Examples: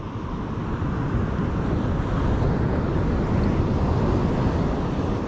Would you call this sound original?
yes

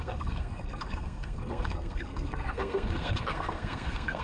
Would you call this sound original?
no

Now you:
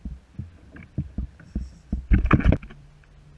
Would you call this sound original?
yes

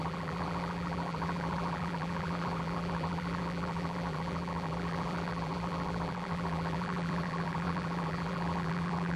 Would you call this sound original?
no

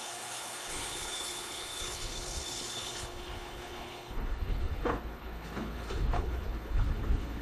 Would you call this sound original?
no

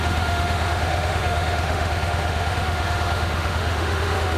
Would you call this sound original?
no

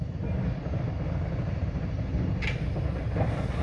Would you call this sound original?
yes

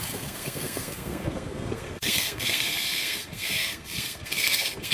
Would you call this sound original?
no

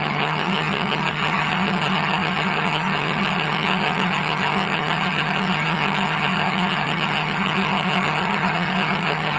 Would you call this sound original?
no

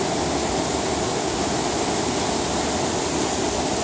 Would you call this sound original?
yes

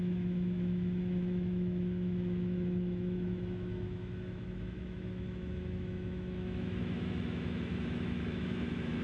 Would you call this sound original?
no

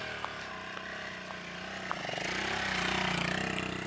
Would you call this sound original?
yes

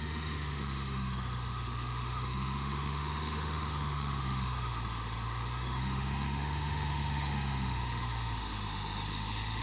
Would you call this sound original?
no